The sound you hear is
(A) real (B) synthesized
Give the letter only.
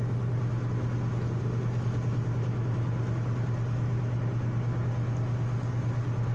A